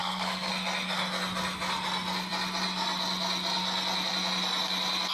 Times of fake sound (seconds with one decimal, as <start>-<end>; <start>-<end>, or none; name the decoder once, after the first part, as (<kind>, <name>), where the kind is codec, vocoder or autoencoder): 0.0-0.5 (codec, SNAC)